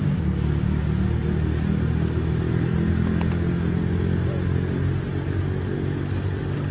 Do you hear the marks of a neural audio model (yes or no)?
no